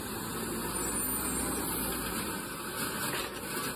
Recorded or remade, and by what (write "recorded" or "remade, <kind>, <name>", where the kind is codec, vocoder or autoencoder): recorded